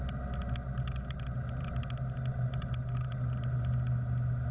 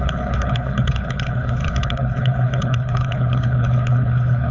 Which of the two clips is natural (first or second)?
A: first